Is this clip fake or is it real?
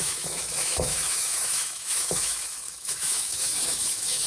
fake